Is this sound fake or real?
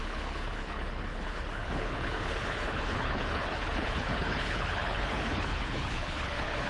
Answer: fake